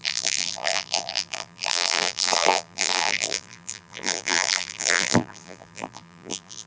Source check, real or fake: fake